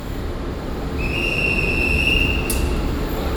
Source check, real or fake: real